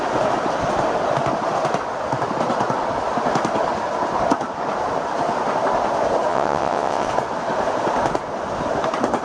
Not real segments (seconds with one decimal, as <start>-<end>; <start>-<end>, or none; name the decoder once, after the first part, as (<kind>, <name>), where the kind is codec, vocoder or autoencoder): 6.3-7.1 (vocoder, WaveNeXt)